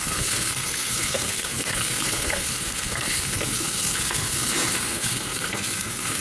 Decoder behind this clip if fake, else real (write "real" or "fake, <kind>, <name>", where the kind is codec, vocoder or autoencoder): fake, codec, SNAC